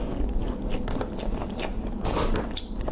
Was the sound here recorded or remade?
recorded